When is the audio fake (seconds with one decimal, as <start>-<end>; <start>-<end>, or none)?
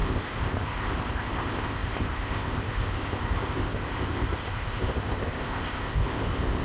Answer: 0.0-6.6